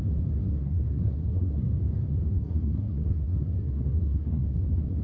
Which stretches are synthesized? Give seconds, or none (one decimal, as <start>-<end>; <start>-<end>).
0.4-1.7; 2.3-5.0